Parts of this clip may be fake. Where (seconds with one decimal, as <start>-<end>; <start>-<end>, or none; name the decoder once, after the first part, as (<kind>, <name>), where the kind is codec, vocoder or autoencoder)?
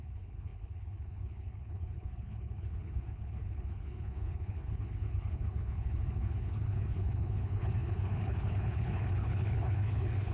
0.0-10.3 (codec, HILCodec)